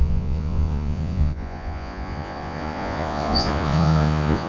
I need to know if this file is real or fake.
fake